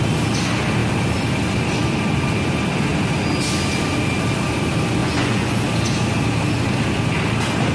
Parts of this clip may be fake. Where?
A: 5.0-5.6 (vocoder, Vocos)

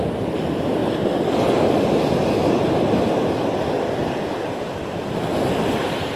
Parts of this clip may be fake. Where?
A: none

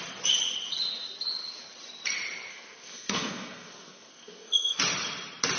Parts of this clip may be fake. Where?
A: 2.5-4.8 (codec, SNAC)

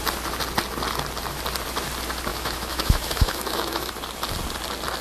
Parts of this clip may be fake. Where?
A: 2.3-3.9 (autoencoder, DAC-VAE)

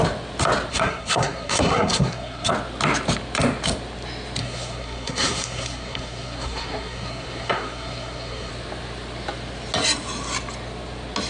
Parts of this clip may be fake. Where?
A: 0.7-2.5 (codec, SNAC); 4.4-8.5

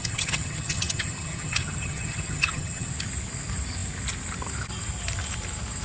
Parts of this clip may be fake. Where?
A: 0.0-2.9 (vocoder, HiFi-GAN)